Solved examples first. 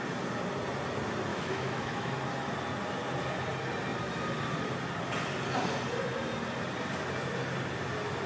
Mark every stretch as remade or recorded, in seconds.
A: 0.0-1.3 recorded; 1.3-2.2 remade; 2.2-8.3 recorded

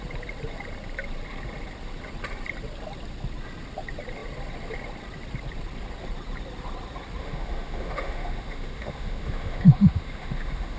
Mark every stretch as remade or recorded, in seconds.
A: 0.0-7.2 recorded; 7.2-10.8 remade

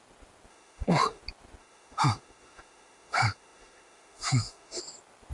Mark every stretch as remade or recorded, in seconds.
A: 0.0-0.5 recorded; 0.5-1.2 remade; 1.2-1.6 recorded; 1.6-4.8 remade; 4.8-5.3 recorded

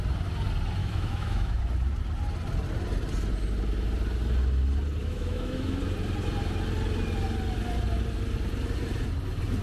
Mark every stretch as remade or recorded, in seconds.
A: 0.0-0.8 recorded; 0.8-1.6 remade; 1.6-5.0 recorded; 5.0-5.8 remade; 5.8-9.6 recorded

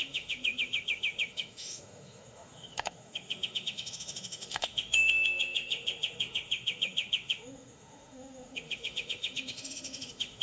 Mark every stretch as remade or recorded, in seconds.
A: 0.0-10.4 remade